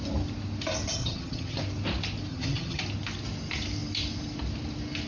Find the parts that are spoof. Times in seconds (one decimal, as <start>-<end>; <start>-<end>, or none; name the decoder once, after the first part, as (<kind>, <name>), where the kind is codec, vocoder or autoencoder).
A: 1.0-1.6 (vocoder, HiFi-GAN); 2.3-2.8